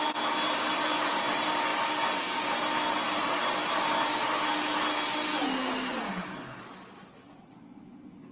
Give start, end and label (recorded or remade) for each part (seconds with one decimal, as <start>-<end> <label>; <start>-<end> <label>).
0.0-6.1 recorded; 6.1-6.6 remade; 6.6-8.3 recorded